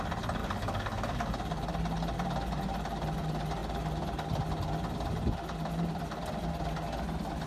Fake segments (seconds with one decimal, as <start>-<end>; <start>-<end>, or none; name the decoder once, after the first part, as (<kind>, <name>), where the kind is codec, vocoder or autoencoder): 0.4-1.3 (codec, DAC)